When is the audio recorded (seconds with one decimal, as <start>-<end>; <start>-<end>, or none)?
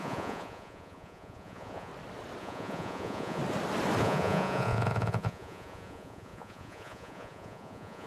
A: 1.9-2.4; 3.4-4.0